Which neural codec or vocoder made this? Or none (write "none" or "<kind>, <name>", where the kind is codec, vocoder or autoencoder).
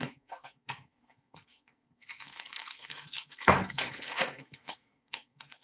codec, SNAC